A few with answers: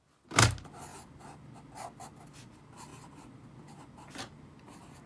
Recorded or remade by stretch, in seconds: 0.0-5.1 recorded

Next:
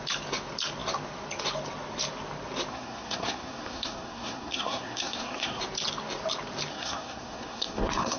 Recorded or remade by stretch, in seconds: 0.0-2.7 recorded; 2.7-5.6 remade; 5.6-6.7 recorded; 6.7-8.2 remade

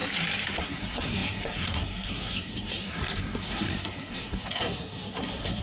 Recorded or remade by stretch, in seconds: 0.0-0.6 recorded; 0.6-5.6 remade

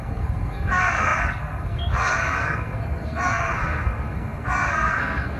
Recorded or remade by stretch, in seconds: 0.0-5.4 remade

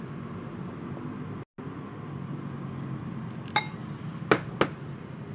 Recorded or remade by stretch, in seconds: 0.0-5.3 recorded

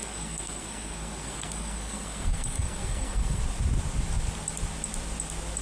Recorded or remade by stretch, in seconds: 0.0-3.4 remade; 3.4-5.6 recorded

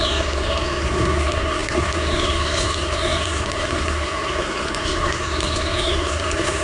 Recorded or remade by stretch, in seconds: 0.0-6.6 remade

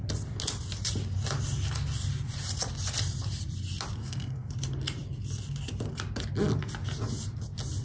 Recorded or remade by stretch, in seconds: 0.0-4.0 recorded; 4.0-4.5 remade; 4.5-7.8 recorded